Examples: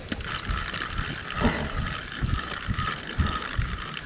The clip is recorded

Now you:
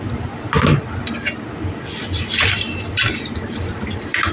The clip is remade